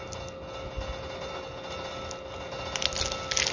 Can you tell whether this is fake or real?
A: real